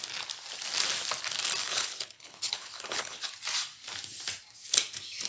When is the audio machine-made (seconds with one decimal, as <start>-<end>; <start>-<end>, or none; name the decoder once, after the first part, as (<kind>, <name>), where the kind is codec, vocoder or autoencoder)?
1.6-3.3 (codec, HILCodec)